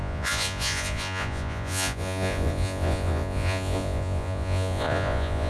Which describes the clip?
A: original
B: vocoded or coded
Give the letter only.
B